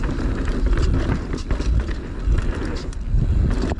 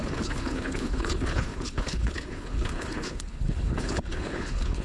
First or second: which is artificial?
second